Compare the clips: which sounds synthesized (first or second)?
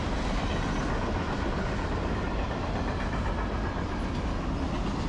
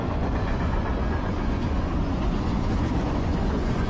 second